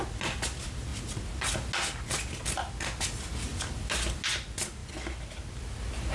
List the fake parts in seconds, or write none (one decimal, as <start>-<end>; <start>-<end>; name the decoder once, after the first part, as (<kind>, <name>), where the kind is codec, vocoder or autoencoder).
none